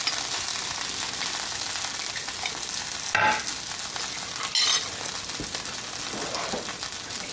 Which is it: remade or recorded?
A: recorded